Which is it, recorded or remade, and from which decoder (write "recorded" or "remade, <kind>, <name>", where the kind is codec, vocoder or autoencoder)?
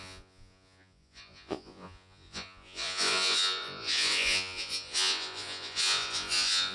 remade, vocoder, Vocos